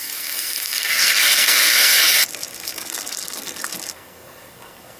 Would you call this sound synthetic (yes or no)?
yes